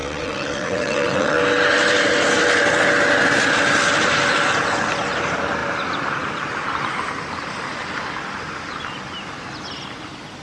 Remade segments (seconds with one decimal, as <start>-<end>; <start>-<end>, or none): 0.0-1.4